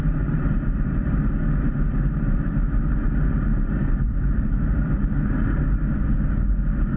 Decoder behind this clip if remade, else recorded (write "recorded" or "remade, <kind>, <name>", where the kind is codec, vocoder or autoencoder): remade, vocoder, BigVGAN v2